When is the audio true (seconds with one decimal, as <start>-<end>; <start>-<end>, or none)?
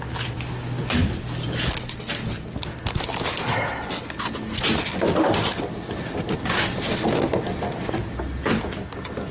0.0-9.3